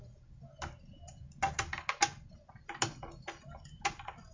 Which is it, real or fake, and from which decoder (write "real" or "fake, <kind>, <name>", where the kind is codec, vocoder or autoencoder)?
real